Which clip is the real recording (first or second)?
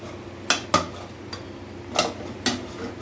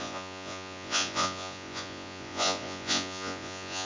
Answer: first